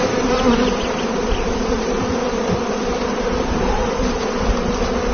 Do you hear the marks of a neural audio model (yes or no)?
no